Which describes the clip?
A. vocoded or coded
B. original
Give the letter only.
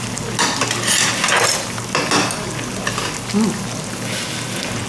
B